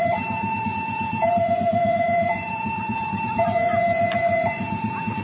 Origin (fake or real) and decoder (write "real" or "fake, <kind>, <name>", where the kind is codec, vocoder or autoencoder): fake, vocoder, Vocos